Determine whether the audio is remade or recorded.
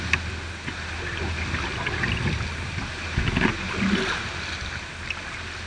recorded